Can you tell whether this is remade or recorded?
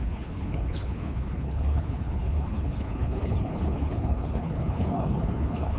remade